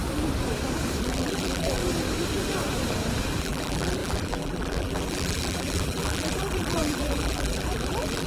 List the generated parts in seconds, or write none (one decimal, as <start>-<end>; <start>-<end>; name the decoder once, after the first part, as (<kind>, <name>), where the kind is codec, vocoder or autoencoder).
1.0-1.8 (vocoder, BigVGAN v2); 3.4-8.3